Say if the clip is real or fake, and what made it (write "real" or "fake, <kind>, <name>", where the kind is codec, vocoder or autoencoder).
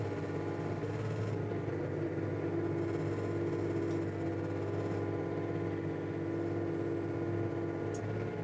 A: real